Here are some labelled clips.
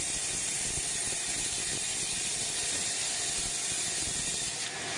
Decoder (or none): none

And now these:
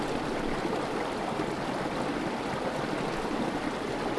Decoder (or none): none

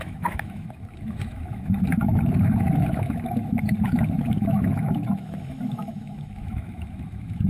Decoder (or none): autoencoder, DAC-VAE